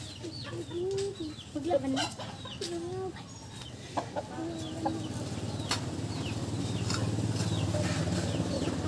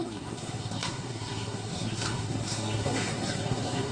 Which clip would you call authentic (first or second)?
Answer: first